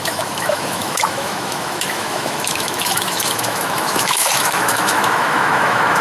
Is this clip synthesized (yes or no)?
yes